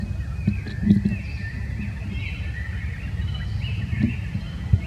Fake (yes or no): no